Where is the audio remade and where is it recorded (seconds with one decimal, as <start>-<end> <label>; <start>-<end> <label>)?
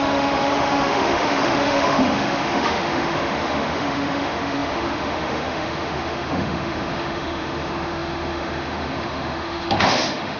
0.0-10.4 remade